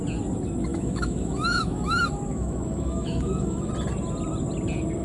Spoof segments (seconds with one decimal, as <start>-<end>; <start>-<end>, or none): 0.7-3.7